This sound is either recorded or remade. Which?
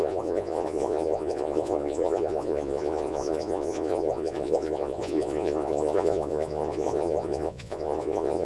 remade